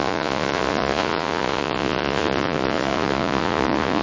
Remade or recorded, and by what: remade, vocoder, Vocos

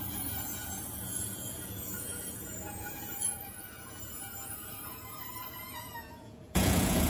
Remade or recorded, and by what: remade, vocoder, Vocos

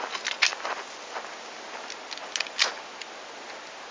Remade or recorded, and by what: recorded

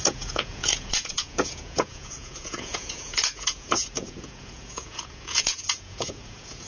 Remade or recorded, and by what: remade, vocoder, Vocos